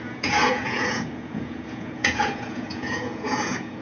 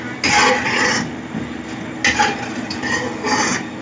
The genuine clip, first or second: second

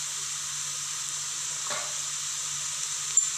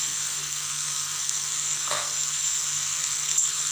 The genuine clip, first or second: first